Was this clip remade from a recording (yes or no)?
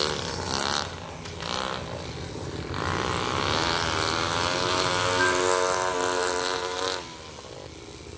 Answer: no